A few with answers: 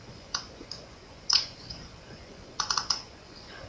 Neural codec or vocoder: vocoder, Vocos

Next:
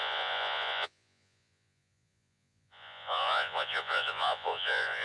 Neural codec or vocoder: vocoder, Vocos